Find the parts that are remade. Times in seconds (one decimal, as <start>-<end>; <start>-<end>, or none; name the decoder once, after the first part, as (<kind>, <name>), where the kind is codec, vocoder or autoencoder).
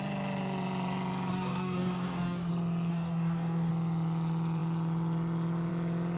1.3-2.5 (codec, DAC); 2.9-3.7